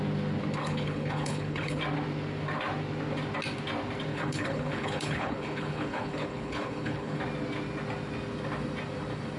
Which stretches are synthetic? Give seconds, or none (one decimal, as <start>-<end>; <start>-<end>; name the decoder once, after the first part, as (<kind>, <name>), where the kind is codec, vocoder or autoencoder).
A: 0.6-1.8 (codec, HILCodec); 4.1-7.2